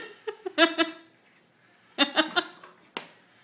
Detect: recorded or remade recorded